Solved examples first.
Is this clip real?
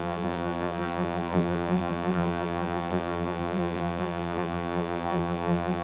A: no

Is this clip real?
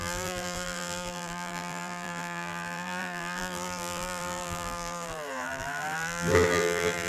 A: no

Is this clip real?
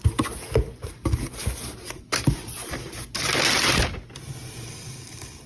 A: yes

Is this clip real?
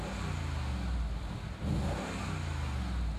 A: yes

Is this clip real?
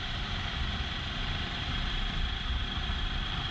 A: no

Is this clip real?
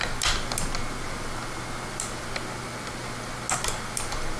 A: yes